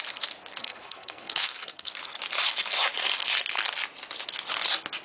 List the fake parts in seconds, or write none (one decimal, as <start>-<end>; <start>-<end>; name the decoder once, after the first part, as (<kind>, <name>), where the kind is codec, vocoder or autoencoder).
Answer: 0.6-1.9 (codec, SNAC)